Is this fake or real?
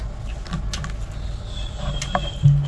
real